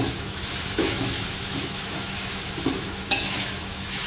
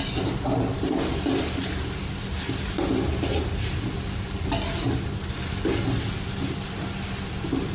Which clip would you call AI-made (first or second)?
first